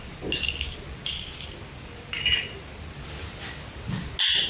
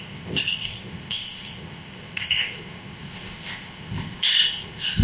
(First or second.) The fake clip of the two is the second